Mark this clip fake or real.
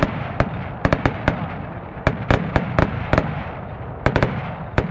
real